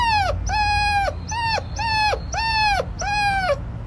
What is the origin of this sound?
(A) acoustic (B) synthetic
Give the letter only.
A